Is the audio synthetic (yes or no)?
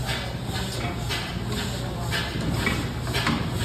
no